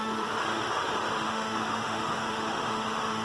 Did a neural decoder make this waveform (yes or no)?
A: yes